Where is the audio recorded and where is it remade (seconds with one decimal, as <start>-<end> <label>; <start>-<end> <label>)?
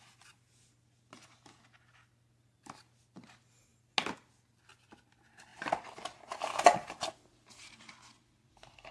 0.0-8.9 recorded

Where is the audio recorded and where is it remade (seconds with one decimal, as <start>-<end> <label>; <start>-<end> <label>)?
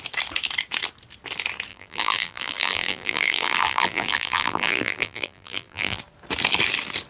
0.0-1.7 recorded; 1.7-6.0 remade; 6.0-7.1 recorded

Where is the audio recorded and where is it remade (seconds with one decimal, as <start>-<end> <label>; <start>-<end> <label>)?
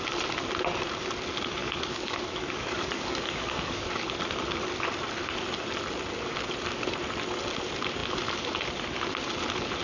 0.0-1.6 recorded; 1.6-3.9 remade; 3.9-9.8 recorded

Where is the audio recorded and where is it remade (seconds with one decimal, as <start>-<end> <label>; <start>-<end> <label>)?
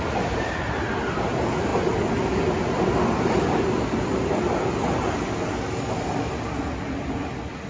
0.0-7.7 recorded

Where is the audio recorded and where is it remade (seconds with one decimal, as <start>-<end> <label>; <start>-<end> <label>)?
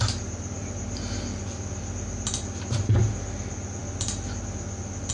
0.0-5.1 recorded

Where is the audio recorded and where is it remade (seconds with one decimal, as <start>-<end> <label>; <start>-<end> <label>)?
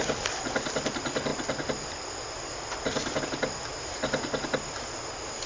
0.0-5.5 recorded